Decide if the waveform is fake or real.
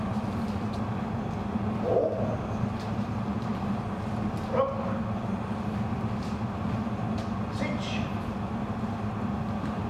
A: real